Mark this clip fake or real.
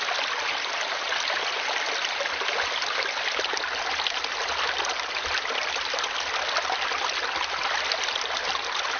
real